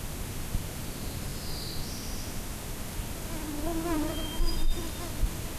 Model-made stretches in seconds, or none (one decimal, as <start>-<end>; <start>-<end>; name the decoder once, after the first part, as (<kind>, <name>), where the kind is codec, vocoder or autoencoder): none